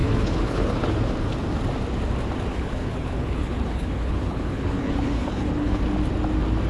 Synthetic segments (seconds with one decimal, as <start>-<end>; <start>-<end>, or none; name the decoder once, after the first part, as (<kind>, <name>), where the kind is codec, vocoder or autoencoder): 0.0-1.1 (codec, HILCodec); 2.5-5.8